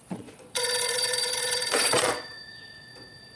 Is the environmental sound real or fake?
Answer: fake